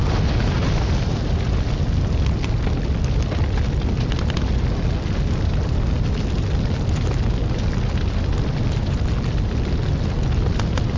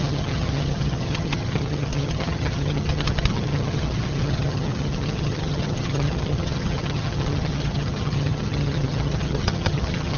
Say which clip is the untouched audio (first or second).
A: first